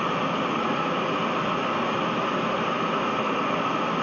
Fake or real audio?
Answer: real